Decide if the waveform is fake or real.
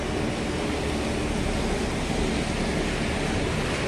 real